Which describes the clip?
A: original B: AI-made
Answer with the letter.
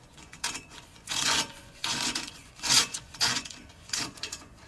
B